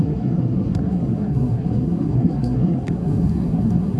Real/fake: fake